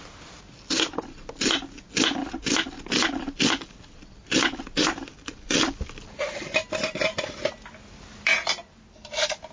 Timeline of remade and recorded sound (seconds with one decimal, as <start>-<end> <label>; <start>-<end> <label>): 0.0-9.5 recorded